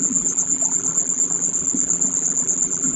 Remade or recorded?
remade